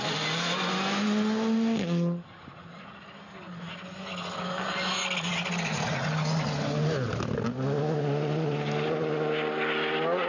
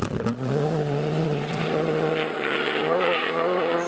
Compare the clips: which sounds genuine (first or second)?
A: first